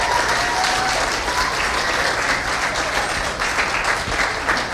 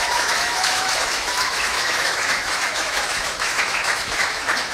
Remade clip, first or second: second